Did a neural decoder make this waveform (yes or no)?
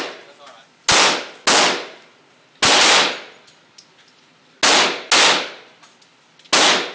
no